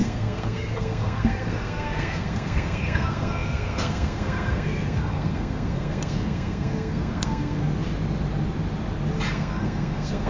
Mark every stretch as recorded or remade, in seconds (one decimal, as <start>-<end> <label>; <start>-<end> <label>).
0.0-7.6 remade; 7.6-9.3 recorded; 9.3-10.3 remade